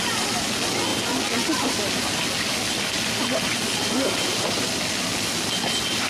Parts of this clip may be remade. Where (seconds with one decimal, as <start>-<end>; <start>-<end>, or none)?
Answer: none